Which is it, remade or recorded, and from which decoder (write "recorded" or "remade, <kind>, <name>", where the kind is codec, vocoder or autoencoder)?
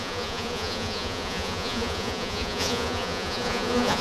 remade, vocoder, Vocos